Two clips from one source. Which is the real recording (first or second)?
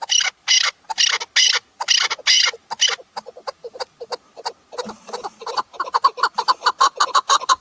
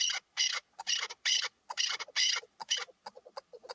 first